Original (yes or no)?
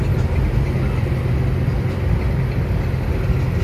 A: yes